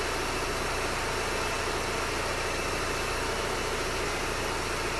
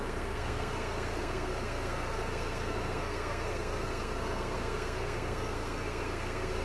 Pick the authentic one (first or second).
first